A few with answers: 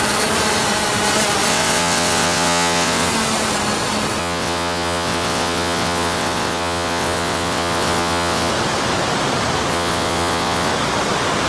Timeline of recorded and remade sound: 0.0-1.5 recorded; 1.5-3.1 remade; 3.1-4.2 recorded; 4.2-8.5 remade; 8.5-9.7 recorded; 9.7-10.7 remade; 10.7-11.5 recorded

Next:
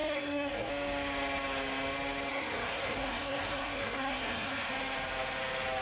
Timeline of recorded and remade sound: 0.0-0.7 remade; 0.7-2.3 recorded; 2.3-4.7 remade; 4.7-5.8 recorded

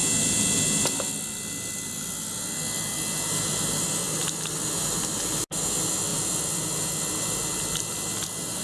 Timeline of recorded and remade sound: 0.0-8.6 recorded

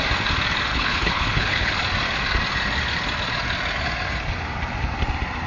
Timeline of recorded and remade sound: 0.0-0.7 recorded; 0.7-1.7 remade; 1.7-5.5 recorded

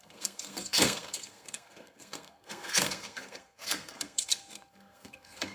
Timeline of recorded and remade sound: 0.0-5.5 remade

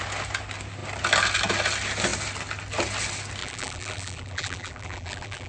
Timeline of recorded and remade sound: 0.0-3.4 recorded; 3.4-5.5 remade